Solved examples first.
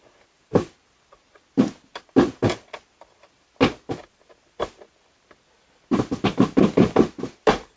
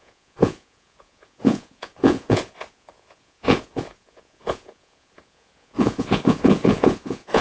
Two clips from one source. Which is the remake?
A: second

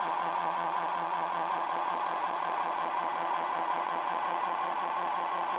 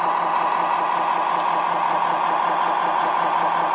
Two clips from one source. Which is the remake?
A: first